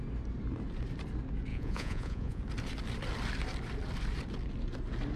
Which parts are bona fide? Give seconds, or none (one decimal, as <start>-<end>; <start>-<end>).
0.0-1.5; 2.4-5.2